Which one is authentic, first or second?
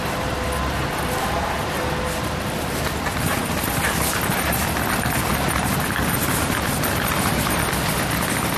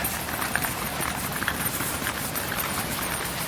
first